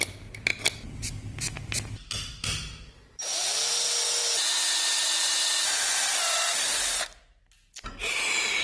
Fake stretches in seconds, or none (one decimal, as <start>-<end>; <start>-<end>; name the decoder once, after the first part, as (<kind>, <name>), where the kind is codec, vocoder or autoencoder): none